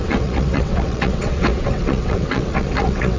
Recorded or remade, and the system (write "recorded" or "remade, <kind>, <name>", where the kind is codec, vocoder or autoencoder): remade, vocoder, WaveNeXt